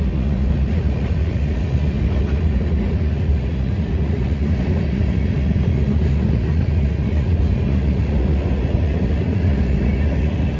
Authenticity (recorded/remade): remade